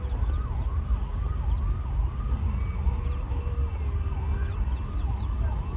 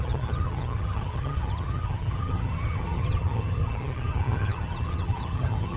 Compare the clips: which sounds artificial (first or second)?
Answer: second